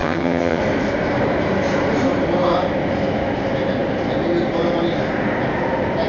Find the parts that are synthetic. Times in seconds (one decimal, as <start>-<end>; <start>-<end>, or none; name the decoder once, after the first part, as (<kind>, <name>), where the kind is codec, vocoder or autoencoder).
0.0-0.6 (vocoder, HiFi-GAN)